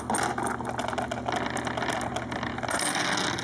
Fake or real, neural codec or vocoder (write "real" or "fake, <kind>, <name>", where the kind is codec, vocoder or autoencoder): real